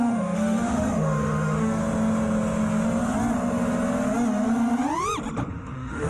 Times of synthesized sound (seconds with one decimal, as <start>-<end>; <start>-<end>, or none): 0.0-1.8; 5.5-6.1